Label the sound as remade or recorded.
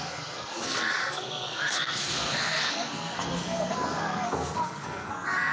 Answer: remade